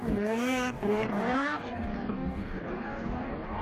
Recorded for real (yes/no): no